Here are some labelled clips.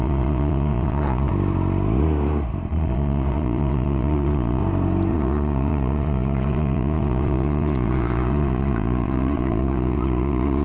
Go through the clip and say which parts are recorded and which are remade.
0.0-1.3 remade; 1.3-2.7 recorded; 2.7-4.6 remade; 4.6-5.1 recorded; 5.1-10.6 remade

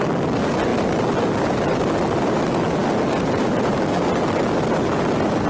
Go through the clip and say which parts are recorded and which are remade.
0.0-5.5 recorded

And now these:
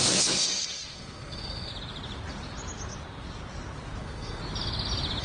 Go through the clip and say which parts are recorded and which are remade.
0.0-1.7 remade; 1.7-4.0 recorded; 4.0-4.4 remade; 4.4-5.2 recorded

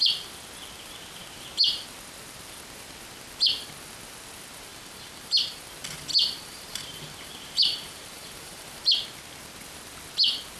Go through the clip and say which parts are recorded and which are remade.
0.0-4.7 recorded; 4.7-5.6 remade; 5.6-6.1 recorded; 6.1-8.8 remade; 8.8-10.6 recorded

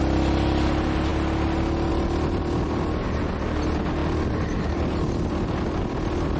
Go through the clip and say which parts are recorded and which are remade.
0.0-6.4 recorded

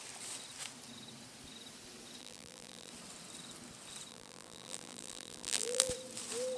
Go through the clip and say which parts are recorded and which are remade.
0.0-2.2 recorded; 2.2-2.9 remade; 2.9-4.1 recorded; 4.1-5.9 remade; 5.9-6.6 recorded